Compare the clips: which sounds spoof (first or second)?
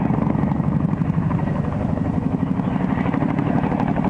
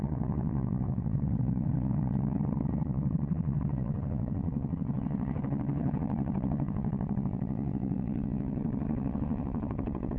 second